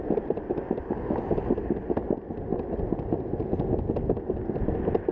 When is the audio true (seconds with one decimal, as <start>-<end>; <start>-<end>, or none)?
0.0-5.1